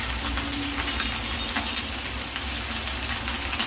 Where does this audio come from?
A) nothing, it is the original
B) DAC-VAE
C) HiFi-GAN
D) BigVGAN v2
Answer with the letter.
A